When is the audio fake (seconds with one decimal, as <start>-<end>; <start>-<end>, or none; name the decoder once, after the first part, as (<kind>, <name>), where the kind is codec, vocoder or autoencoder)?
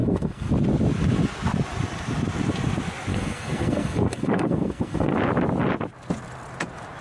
0.0-0.5 (codec, SNAC); 3.1-5.1